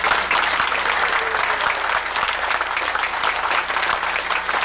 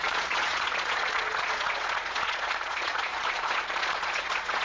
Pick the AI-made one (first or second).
second